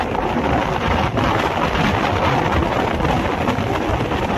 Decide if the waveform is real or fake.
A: real